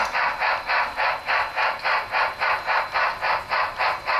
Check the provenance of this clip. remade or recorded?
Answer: recorded